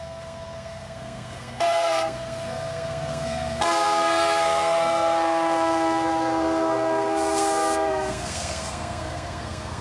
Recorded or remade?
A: remade